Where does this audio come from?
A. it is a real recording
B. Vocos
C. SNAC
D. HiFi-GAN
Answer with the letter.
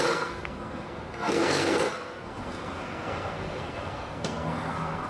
C